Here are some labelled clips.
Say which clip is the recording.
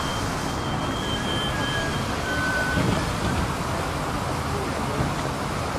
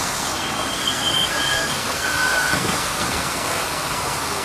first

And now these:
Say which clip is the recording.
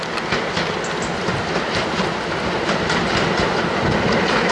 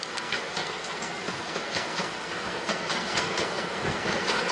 first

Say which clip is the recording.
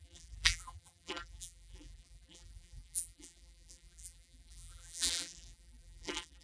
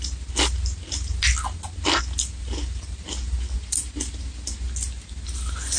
second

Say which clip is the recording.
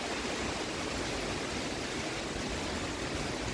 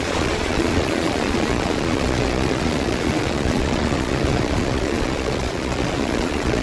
first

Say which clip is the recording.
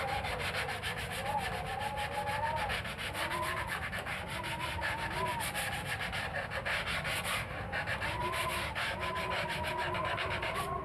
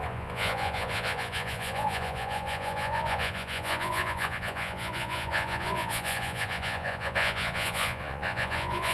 first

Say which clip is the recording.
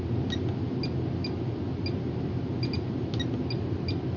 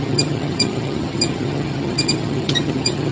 first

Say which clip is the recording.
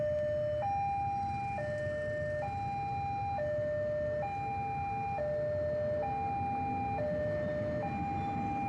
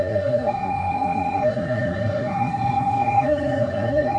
first